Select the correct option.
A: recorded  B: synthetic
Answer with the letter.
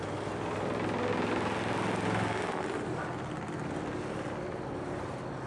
A